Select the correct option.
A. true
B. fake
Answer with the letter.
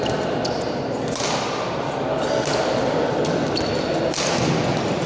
A